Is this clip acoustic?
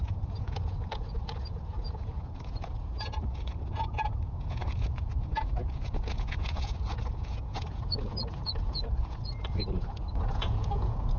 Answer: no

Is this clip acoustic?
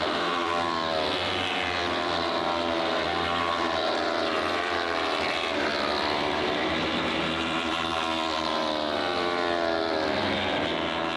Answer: no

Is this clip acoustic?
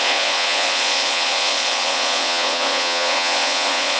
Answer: no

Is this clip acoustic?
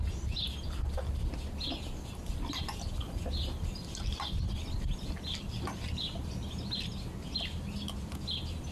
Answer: yes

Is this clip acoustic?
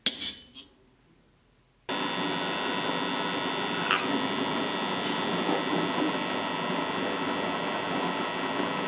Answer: yes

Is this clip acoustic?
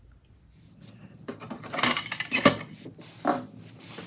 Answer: yes